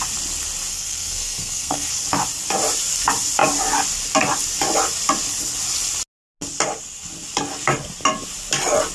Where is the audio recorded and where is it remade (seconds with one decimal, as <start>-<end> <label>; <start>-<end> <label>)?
0.0-0.7 recorded; 0.7-1.9 remade; 1.9-8.9 recorded